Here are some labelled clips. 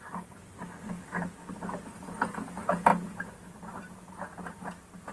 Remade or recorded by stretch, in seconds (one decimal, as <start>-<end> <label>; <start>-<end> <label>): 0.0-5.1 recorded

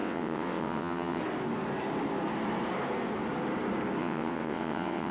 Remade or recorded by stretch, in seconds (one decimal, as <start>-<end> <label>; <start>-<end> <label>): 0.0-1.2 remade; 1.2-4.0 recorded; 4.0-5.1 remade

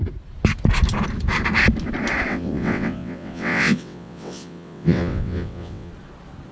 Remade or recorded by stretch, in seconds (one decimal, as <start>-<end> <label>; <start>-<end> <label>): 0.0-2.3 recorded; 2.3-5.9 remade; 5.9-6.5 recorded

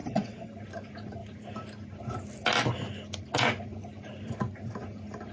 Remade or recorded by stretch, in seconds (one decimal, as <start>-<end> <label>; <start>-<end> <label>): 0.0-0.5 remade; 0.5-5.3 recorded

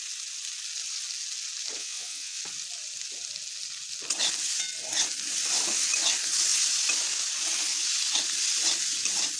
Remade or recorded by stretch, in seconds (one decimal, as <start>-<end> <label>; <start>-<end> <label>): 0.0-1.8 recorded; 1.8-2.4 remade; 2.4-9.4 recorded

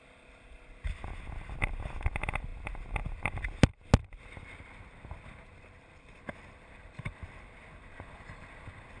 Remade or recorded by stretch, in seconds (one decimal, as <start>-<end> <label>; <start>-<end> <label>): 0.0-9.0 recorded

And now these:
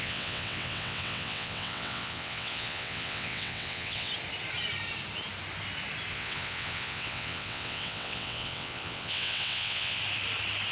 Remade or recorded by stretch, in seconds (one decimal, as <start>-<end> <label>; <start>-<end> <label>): 0.0-4.1 remade; 4.1-6.1 recorded; 6.1-10.0 remade; 10.0-10.7 recorded

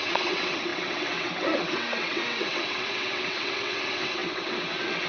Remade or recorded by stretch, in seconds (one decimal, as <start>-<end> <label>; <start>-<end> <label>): 0.0-5.1 remade